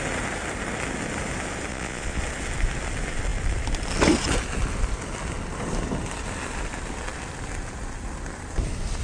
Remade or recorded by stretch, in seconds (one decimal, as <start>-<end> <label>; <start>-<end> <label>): 0.0-1.7 recorded; 1.7-2.2 remade; 2.2-9.0 recorded